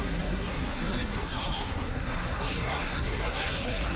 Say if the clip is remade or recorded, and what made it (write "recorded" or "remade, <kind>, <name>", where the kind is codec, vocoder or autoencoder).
remade, codec, SNAC